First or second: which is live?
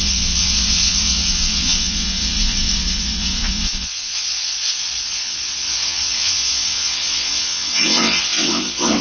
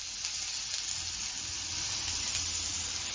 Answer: second